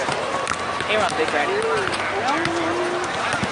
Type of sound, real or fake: real